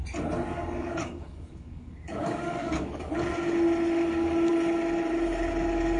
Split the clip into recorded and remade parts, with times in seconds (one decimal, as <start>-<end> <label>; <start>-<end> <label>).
0.0-0.5 recorded; 0.5-3.1 remade; 3.1-6.0 recorded